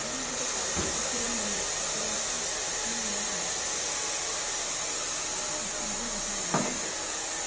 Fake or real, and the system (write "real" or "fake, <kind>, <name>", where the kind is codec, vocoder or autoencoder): real